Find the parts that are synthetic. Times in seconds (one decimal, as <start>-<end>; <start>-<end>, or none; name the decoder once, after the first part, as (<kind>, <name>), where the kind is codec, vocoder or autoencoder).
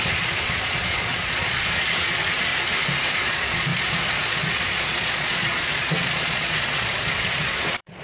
0.0-2.5 (vocoder, Vocos); 3.1-8.0